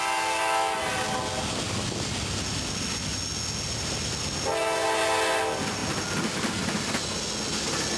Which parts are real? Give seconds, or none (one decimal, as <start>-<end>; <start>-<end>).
0.0-8.0